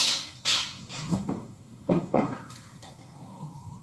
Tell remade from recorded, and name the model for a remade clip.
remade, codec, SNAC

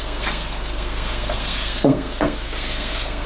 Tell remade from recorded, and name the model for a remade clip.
remade, codec, SNAC